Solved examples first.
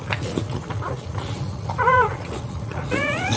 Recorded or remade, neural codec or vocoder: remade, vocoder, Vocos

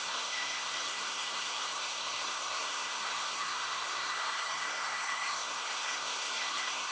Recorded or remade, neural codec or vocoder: remade, codec, SNAC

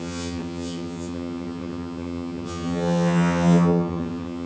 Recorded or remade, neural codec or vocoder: remade, vocoder, HiFi-GAN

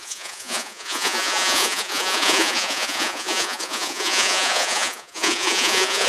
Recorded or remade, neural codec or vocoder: remade, vocoder, Vocos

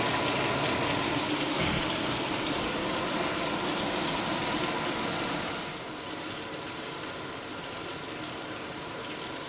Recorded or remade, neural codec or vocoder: recorded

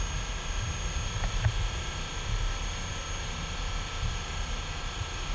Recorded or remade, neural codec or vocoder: recorded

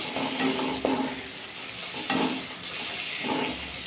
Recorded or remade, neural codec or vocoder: recorded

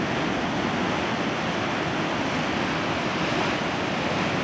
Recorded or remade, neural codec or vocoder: recorded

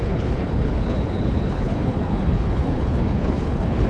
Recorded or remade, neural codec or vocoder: remade, codec, HILCodec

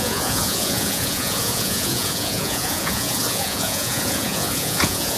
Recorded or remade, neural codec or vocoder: remade, vocoder, Vocos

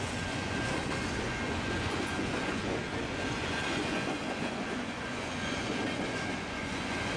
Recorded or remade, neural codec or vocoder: remade, vocoder, Vocos